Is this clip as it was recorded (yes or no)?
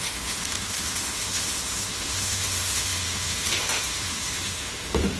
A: no